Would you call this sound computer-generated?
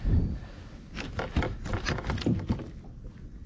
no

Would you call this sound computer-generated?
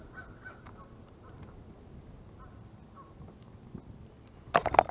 no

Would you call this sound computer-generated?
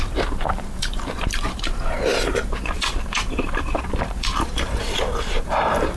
yes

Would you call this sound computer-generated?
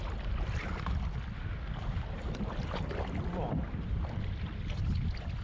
no